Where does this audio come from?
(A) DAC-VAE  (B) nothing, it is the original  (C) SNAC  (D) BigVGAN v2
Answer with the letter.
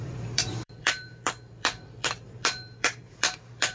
D